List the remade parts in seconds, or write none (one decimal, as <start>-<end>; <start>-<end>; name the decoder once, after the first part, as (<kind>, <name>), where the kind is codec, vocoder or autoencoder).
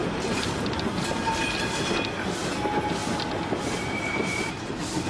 3.0-4.5 (vocoder, BigVGAN v2)